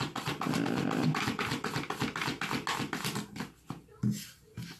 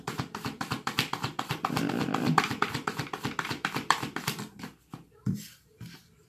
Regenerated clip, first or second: second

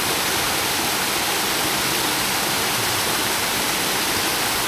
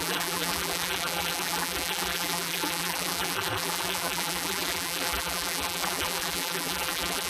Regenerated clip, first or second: second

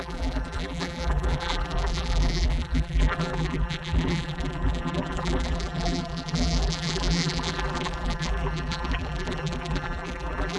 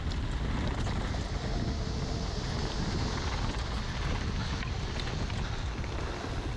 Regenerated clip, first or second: first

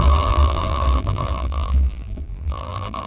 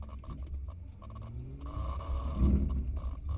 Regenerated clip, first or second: first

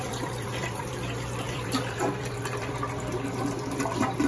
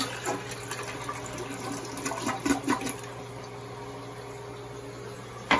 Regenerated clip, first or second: first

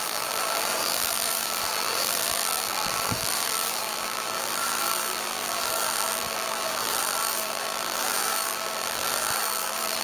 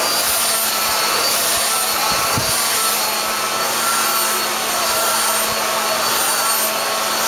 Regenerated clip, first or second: first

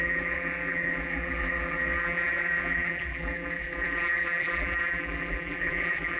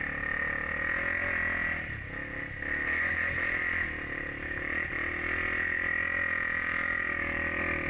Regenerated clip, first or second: first